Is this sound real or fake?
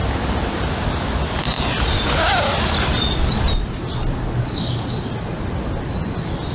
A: real